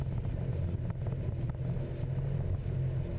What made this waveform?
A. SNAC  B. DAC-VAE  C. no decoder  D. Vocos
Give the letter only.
C